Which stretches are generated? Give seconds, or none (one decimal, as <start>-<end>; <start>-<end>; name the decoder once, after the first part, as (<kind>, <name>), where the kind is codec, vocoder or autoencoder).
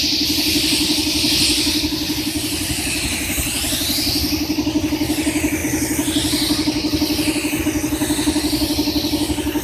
none